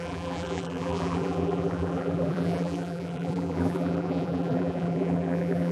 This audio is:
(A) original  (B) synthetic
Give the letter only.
B